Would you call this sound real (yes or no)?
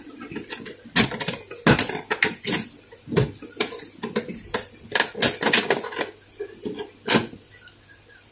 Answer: yes